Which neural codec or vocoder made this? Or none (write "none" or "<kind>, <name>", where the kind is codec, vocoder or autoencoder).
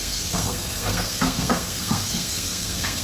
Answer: codec, SNAC